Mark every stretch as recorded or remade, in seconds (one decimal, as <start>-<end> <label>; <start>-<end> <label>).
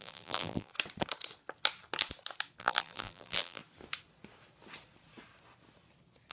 0.0-0.7 remade; 0.7-2.6 recorded; 2.6-3.6 remade; 3.6-6.3 recorded